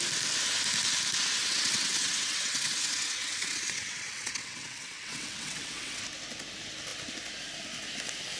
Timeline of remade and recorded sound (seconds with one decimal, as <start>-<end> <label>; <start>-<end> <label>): 0.0-1.4 recorded; 1.4-6.0 remade; 6.0-8.4 recorded